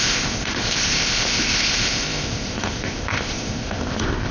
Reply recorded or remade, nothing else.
remade